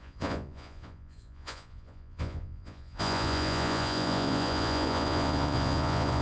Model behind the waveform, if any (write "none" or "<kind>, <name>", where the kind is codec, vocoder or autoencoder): vocoder, Vocos